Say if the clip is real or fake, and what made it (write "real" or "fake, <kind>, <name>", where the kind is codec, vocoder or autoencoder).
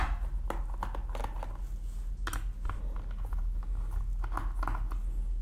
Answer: real